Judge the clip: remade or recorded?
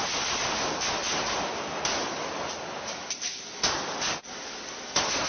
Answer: recorded